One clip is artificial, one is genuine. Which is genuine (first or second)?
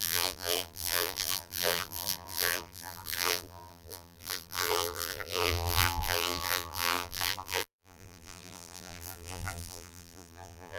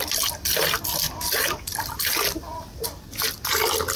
second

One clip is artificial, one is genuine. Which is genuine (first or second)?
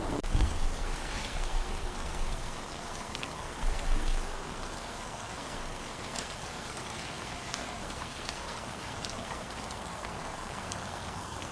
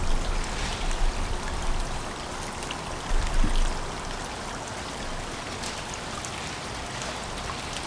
second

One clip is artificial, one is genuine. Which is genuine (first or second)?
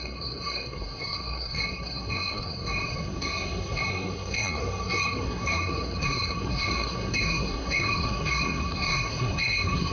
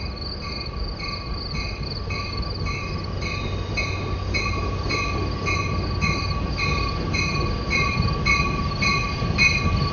second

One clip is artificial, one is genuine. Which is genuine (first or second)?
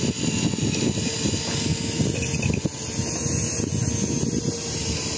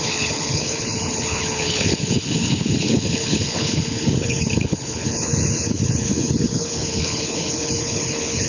first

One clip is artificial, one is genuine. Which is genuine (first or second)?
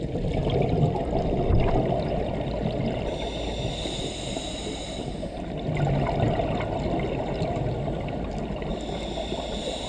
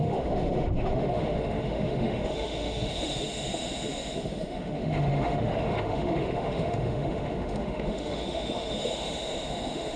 first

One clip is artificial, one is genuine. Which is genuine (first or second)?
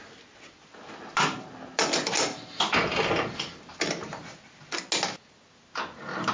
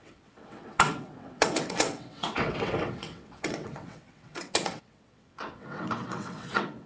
first